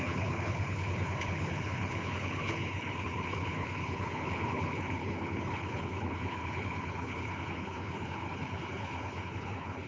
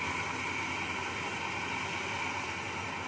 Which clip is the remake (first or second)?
first